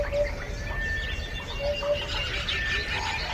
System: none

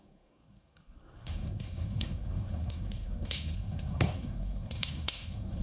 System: codec, SNAC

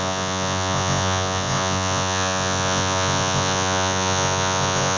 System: vocoder, Vocos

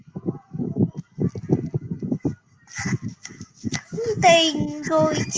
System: none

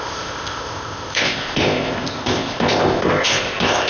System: codec, ZipCodec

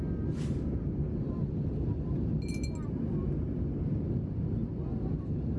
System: none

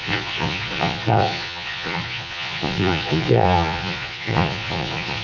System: vocoder, Vocos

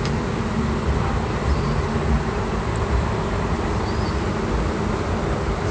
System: none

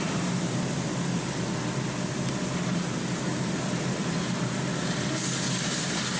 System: none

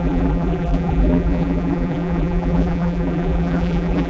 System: vocoder, BigVGAN v2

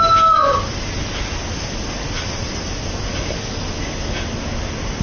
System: none